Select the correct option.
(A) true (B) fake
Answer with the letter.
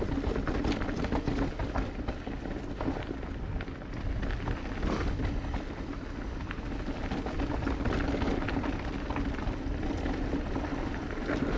A